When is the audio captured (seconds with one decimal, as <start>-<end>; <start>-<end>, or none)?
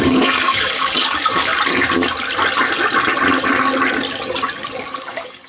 1.5-4.8